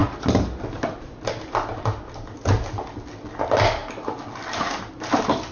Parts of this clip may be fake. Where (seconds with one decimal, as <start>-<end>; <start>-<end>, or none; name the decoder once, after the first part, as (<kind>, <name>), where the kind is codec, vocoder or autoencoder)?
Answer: none